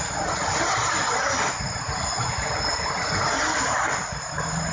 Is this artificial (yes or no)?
no